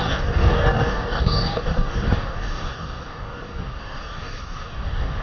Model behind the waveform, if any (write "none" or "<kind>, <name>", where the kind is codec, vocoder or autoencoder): codec, DAC